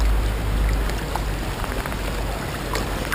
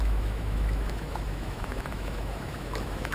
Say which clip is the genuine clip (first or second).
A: first